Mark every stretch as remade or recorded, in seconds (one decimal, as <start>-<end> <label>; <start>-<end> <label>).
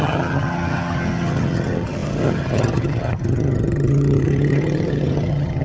0.0-5.6 remade